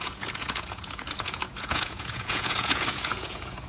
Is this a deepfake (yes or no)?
yes